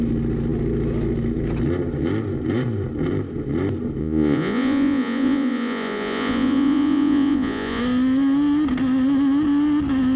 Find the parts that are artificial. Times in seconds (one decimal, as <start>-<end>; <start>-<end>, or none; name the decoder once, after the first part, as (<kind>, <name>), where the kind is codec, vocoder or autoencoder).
4.0-7.8 (vocoder, Vocos)